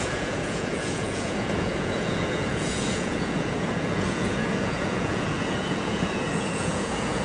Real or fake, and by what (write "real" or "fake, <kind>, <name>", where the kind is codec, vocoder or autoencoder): fake, vocoder, Vocos